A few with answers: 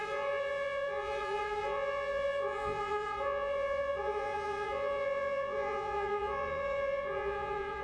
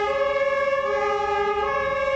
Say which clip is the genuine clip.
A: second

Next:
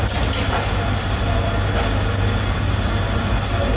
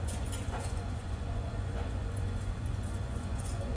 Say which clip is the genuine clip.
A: first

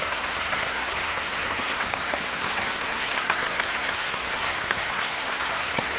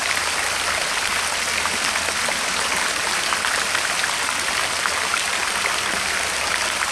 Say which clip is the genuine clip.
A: second